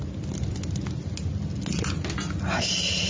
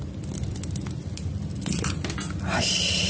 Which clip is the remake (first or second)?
second